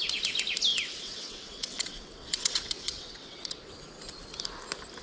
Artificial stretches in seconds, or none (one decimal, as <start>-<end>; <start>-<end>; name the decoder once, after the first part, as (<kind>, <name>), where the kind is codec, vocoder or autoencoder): 0.7-3.7 (vocoder, WaveNeXt)